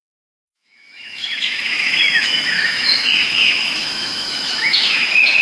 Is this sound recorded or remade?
remade